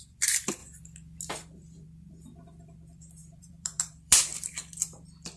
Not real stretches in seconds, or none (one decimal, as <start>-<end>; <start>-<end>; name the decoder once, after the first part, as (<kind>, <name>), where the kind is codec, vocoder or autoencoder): 0.0-0.6 (vocoder, BigVGAN v2); 1.3-4.3